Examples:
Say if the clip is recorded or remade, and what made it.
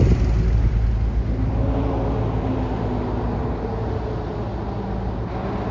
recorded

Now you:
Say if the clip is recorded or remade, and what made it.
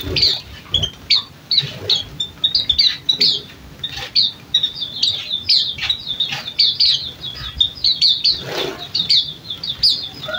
recorded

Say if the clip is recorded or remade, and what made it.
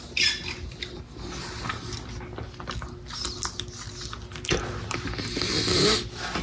recorded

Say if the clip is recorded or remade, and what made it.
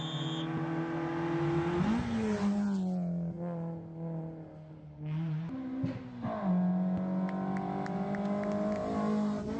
recorded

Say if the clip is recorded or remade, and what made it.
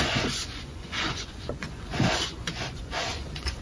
remade, vocoder, Vocos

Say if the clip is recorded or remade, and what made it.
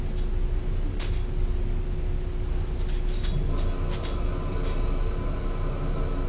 recorded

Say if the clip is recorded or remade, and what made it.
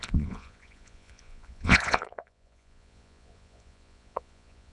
remade, vocoder, Vocos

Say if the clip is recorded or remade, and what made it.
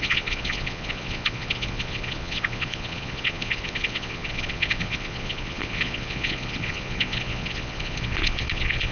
remade, vocoder, Vocos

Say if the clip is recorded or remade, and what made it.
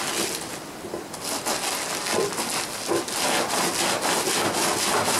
recorded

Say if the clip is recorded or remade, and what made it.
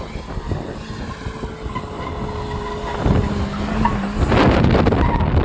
recorded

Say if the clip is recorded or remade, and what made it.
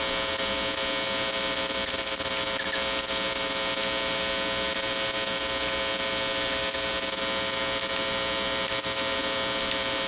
recorded